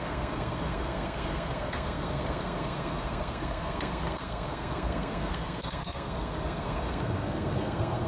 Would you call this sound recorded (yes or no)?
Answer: no